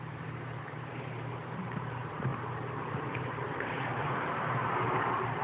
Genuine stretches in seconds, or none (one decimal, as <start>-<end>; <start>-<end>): none